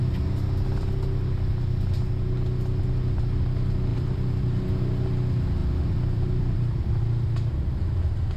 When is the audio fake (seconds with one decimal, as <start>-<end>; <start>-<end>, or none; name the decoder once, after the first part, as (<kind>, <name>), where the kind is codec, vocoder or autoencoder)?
3.9-4.6 (vocoder, BigVGAN v2); 5.6-7.0